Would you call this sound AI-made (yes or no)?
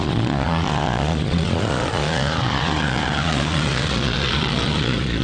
yes